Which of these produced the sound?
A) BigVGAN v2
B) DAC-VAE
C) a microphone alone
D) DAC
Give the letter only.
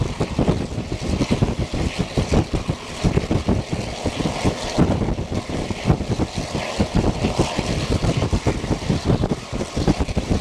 A